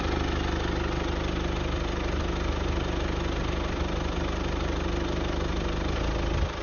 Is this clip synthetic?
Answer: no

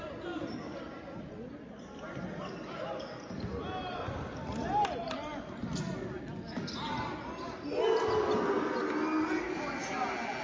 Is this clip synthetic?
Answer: no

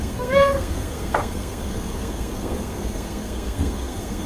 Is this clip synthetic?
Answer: yes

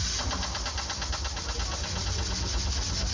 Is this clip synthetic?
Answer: no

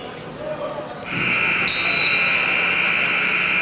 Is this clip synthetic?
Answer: no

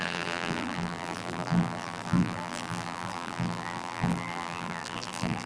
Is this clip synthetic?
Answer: yes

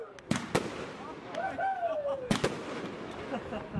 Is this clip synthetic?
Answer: no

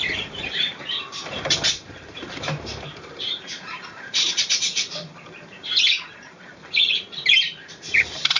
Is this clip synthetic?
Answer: yes